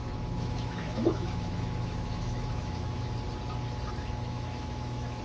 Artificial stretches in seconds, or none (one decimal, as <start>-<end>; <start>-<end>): 0.0-3.1; 4.0-5.2